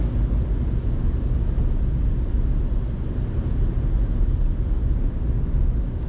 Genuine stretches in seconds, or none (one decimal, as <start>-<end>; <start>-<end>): 0.0-6.1